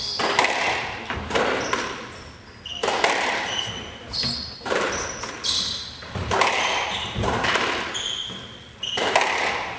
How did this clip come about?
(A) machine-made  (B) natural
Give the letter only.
B